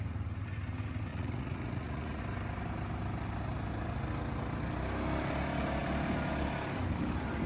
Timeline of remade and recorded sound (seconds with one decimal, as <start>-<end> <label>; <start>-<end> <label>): 0.0-1.1 recorded; 1.1-2.2 remade; 2.2-7.5 recorded